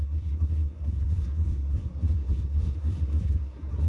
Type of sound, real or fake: fake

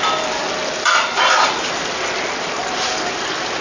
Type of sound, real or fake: real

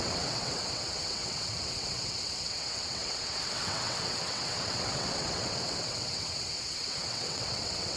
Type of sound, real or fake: fake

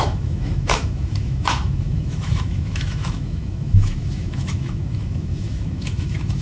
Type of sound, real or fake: fake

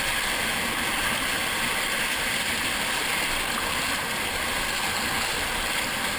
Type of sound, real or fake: real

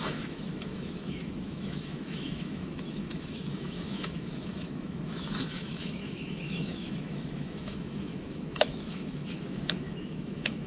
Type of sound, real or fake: fake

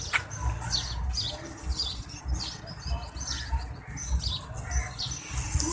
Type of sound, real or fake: real